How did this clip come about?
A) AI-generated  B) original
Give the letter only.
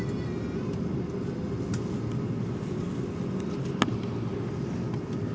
B